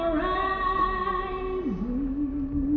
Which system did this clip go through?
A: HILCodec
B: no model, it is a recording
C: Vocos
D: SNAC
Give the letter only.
B